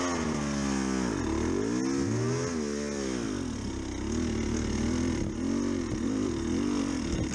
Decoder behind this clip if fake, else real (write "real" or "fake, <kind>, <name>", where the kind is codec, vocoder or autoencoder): real